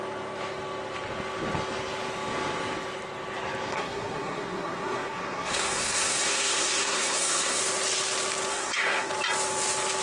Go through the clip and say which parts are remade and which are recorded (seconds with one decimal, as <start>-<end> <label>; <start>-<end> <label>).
0.0-3.7 recorded; 3.7-7.6 remade; 7.6-8.5 recorded; 8.5-9.1 remade; 9.1-10.0 recorded